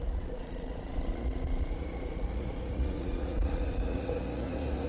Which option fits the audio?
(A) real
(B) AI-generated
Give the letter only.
B